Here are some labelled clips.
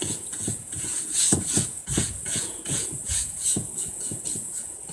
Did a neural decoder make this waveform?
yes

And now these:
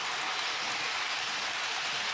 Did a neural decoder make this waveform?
no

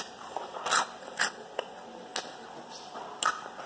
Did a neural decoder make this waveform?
no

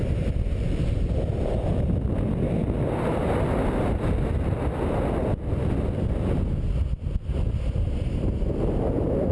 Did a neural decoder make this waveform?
no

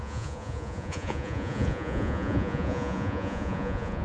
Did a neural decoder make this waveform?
yes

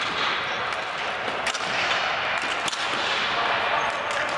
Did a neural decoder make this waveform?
no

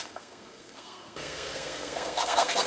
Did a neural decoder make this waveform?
yes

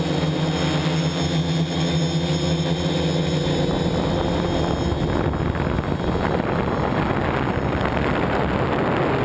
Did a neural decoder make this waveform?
no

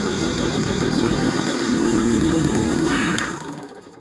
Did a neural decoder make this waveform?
yes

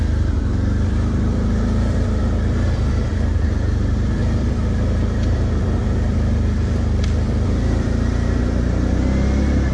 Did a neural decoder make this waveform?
yes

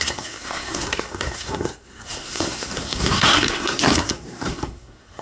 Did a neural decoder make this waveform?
yes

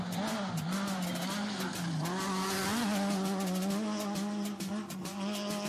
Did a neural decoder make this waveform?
no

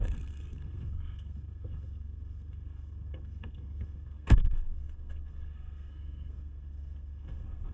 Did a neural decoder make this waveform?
yes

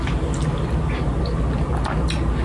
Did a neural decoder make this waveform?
no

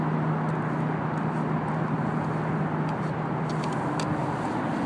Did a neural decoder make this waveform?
no